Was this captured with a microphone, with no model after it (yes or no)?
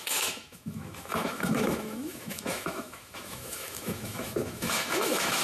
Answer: no